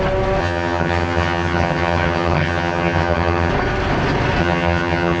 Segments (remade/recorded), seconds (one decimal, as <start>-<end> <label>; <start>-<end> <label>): 0.0-0.4 recorded; 0.4-3.5 remade; 3.5-4.4 recorded; 4.4-5.2 remade